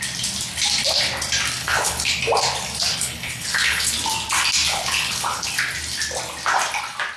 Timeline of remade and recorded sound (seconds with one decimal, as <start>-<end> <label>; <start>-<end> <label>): 0.0-1.6 recorded; 1.6-2.2 remade; 2.2-2.9 recorded; 2.9-3.9 remade; 3.9-4.7 recorded; 4.7-5.5 remade; 5.5-7.2 recorded